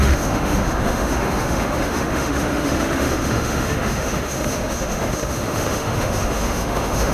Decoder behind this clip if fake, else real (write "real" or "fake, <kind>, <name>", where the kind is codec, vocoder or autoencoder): fake, autoencoder, DAC-VAE